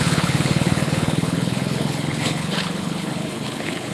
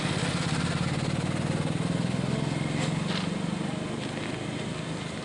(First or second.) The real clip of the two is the second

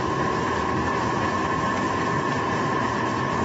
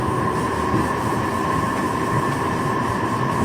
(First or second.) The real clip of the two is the first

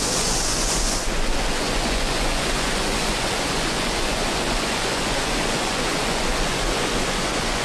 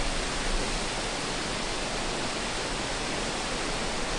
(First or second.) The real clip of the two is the second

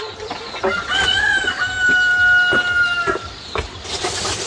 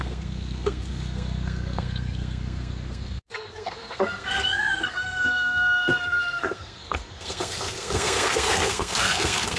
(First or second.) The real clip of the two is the first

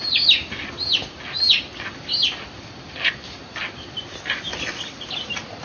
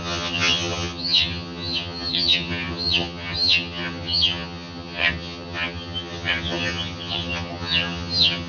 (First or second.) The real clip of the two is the first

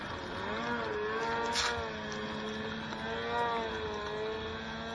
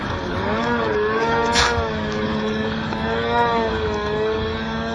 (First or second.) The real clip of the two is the first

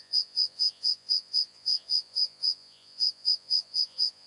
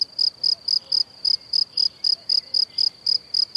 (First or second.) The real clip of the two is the second